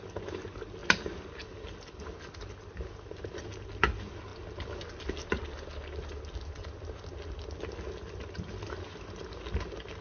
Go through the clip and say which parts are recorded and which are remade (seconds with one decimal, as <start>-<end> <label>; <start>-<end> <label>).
0.0-10.0 recorded